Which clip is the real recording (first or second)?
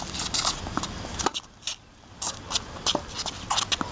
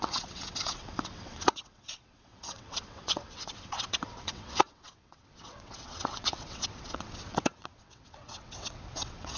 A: first